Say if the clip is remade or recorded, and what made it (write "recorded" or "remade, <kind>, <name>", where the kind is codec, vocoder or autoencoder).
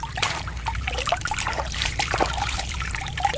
remade, vocoder, BigVGAN v2